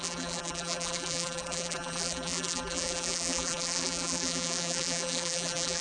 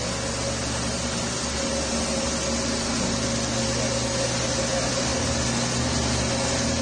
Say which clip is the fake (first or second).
first